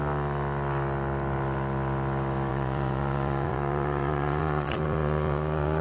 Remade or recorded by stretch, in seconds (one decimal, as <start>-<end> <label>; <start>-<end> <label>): 0.0-2.5 recorded; 2.5-5.8 remade